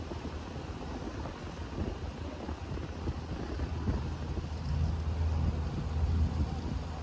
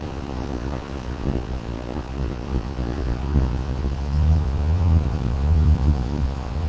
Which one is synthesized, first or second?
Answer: second